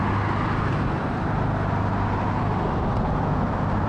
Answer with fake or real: real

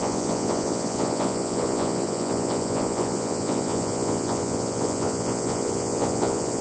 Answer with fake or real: fake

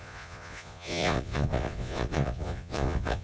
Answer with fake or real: fake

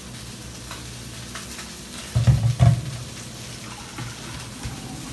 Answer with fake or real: real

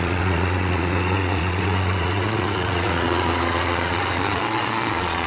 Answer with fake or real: fake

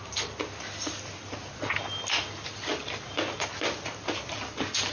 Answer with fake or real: real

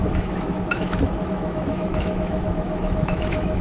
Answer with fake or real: fake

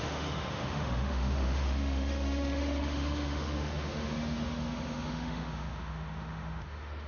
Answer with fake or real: fake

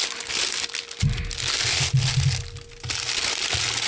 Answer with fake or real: real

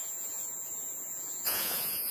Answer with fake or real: fake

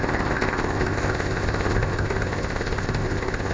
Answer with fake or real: fake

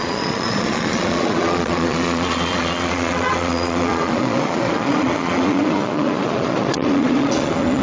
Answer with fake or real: fake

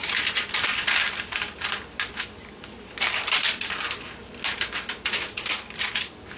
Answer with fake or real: real